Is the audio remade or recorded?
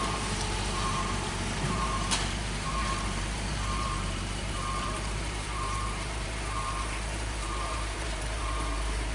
remade